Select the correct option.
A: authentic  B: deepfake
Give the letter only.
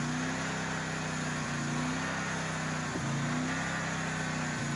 A